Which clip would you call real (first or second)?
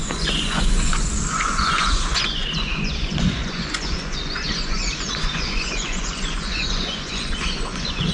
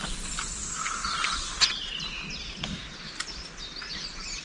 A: second